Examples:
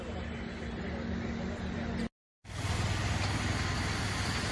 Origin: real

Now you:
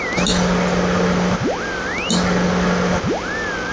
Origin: real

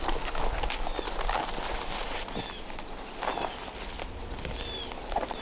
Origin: real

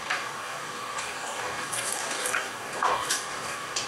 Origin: fake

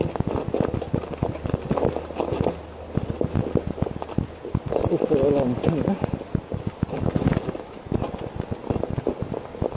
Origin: real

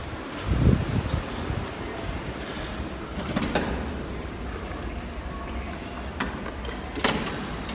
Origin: real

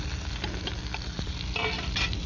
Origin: real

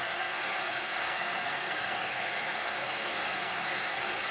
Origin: fake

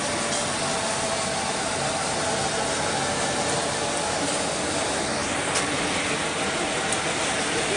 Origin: real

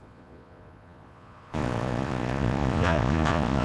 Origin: fake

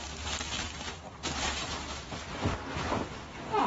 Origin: fake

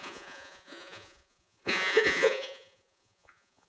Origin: fake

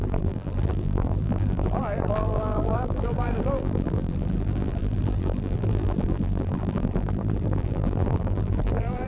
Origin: fake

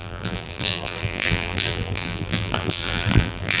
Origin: fake